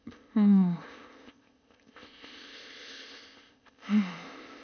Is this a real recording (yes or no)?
no